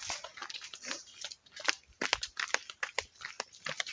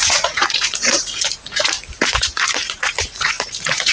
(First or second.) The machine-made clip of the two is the second